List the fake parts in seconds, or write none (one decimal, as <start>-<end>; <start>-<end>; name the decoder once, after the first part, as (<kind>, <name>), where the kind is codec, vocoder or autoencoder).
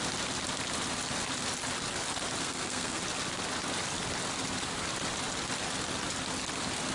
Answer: 2.4-3.0 (codec, SNAC)